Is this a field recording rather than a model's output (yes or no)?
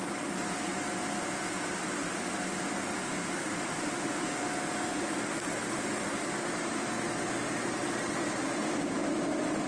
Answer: yes